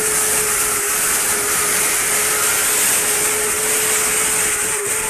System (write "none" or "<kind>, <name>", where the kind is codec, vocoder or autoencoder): none